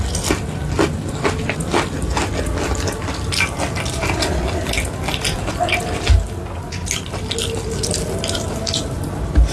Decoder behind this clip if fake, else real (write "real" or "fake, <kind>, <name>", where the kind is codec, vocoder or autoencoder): real